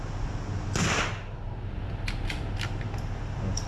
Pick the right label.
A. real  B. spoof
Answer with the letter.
A